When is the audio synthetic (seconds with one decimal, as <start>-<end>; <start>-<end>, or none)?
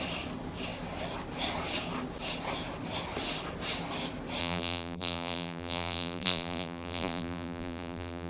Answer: 4.4-8.3